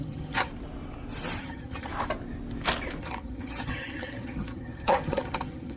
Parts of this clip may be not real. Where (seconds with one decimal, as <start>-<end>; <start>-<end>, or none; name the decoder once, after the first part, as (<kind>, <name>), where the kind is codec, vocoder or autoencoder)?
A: 0.0-0.5 (vocoder, HiFi-GAN); 1.4-1.9; 3.0-5.8